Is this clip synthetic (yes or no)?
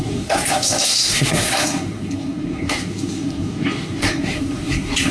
yes